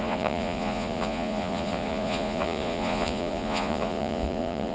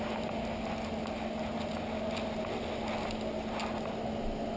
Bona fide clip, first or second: second